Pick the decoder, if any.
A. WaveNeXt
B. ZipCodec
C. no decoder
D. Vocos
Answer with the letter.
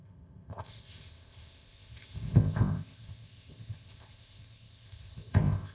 B